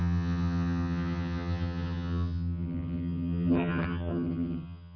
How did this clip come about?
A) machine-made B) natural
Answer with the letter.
A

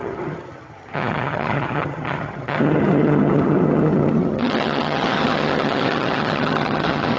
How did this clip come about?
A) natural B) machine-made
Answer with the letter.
B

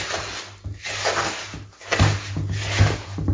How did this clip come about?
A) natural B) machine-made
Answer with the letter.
A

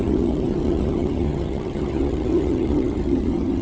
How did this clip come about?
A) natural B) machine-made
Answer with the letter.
B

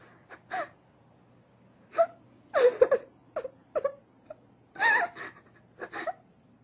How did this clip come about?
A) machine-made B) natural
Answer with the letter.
B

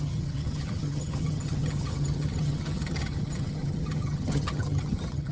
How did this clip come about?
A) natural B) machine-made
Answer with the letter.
B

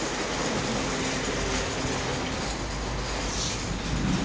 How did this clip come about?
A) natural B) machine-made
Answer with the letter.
A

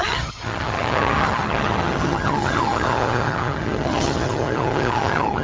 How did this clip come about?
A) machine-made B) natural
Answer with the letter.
A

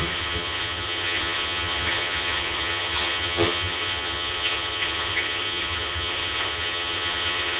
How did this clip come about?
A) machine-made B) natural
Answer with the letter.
A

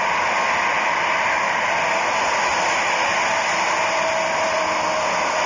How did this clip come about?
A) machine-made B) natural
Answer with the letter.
B